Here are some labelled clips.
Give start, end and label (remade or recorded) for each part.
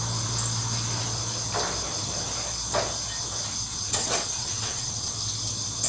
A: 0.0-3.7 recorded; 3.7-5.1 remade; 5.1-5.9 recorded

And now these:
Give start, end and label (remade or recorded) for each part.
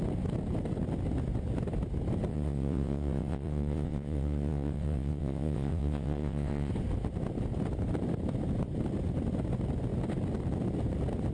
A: 0.0-2.3 recorded; 2.3-6.7 remade; 6.7-11.3 recorded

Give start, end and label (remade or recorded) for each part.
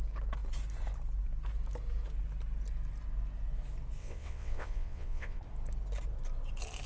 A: 0.0-4.0 recorded; 4.0-5.4 remade; 5.4-6.9 recorded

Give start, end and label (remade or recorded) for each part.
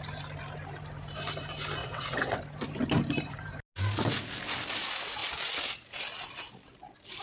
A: 0.0-1.8 recorded; 1.8-2.4 remade; 2.4-7.2 recorded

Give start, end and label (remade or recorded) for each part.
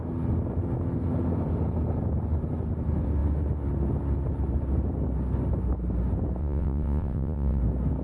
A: 0.0-6.4 recorded; 6.4-7.6 remade; 7.6-8.0 recorded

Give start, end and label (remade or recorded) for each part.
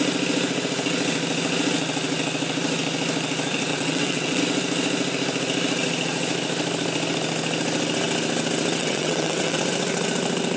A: 0.0-3.7 recorded; 3.7-4.4 remade; 4.4-8.8 recorded; 8.8-9.6 remade; 9.6-10.6 recorded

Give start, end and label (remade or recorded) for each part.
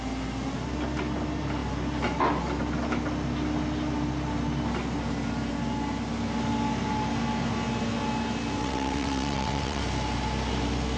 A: 0.0-8.6 recorded; 8.6-9.8 remade; 9.8-11.0 recorded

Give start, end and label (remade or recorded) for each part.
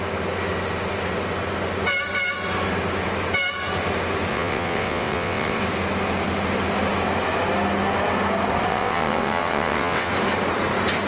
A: 0.0-4.3 recorded; 4.3-5.6 remade; 5.6-8.7 recorded; 8.7-10.1 remade; 10.1-11.1 recorded